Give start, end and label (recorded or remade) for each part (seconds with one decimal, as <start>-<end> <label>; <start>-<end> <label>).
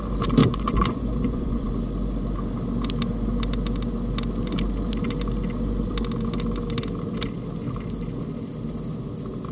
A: 0.0-0.4 recorded; 0.4-1.7 remade; 1.7-9.5 recorded